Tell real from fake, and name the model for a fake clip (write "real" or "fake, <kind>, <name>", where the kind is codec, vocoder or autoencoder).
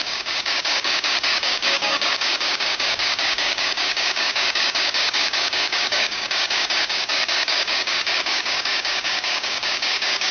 fake, codec, DAC